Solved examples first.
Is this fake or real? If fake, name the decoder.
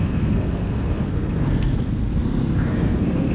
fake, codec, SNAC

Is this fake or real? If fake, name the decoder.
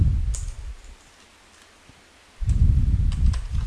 real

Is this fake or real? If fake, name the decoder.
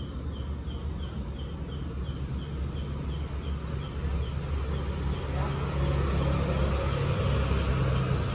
real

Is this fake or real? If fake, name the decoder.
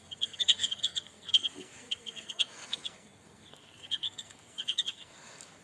fake, codec, SNAC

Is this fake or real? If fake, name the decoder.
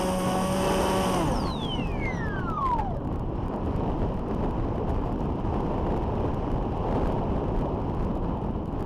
real